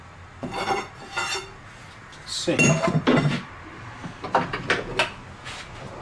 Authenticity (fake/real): real